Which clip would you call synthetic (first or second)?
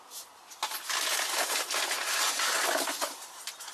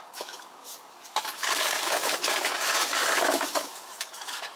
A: second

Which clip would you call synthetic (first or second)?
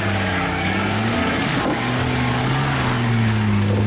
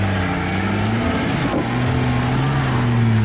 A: first